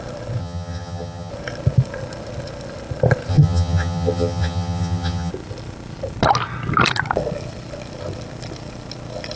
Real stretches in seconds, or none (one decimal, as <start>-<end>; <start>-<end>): 0.0-0.4; 1.3-3.3; 5.3-9.4